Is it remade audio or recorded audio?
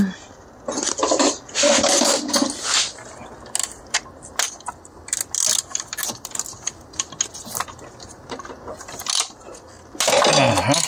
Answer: recorded